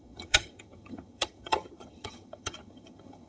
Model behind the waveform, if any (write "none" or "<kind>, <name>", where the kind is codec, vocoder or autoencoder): vocoder, HiFi-GAN